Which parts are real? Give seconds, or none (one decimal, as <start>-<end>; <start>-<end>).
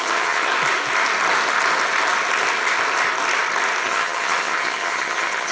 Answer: 0.5-3.8